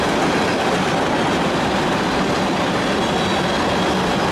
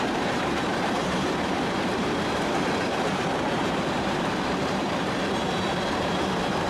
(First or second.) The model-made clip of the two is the second